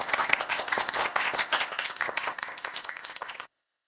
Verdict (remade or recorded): remade